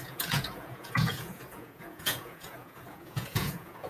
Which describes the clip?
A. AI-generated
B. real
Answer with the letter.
A